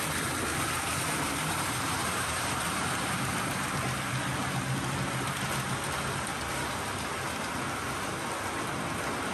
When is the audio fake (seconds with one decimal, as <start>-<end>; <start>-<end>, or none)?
0.5-3.8